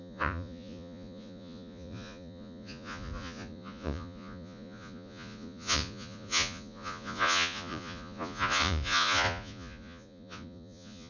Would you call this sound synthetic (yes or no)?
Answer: yes